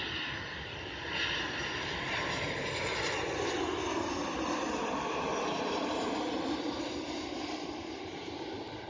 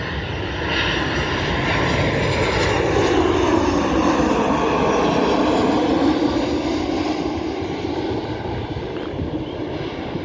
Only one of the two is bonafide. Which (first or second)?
second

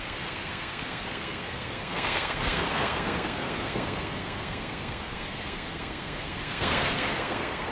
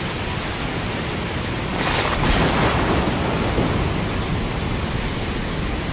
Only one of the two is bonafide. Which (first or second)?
second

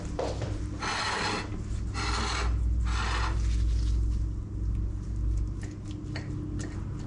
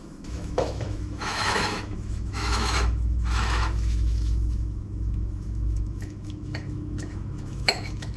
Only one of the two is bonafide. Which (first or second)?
first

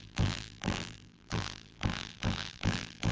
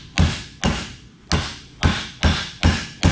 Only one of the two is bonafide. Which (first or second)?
second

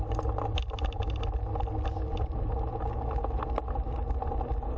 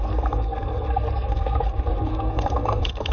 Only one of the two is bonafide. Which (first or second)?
first